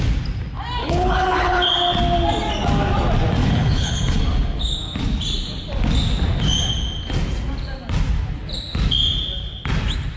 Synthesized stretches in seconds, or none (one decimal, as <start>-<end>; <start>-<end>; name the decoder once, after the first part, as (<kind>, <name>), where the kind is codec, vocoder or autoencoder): 0.8-1.7 (codec, HILCodec); 3.4-4.2